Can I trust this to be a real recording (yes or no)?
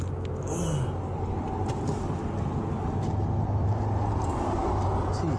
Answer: yes